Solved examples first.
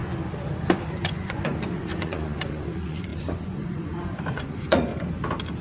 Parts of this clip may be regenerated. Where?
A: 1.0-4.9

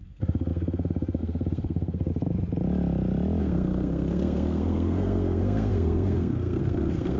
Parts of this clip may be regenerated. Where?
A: 0.0-2.1; 3.4-7.2

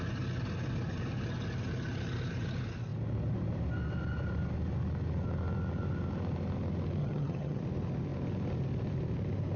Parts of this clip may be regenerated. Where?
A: 7.0-7.6